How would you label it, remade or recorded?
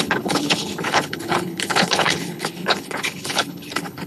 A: remade